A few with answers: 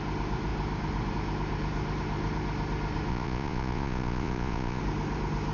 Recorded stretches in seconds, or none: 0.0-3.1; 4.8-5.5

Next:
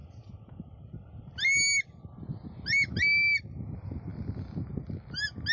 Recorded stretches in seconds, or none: 0.0-5.5

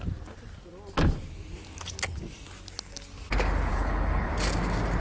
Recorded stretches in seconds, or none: 0.0-3.7; 4.3-5.0

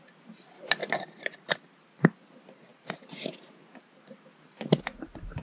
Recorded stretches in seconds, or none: 0.0-0.8; 1.7-5.4

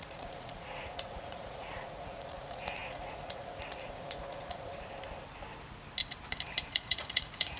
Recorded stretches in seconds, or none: 4.7-6.7

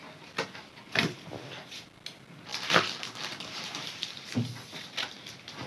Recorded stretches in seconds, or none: 0.0-2.5; 4.6-5.7